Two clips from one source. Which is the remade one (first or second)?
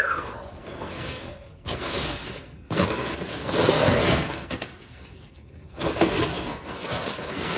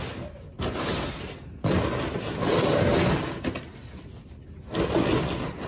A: first